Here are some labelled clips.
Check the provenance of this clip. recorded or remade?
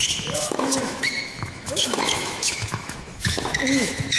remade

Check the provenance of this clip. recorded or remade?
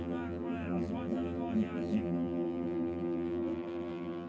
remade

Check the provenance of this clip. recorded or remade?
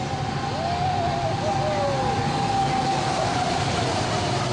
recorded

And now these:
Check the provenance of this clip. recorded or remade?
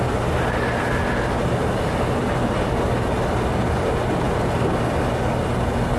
recorded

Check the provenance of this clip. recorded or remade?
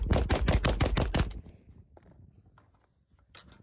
recorded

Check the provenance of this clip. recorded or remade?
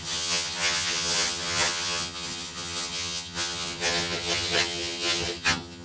remade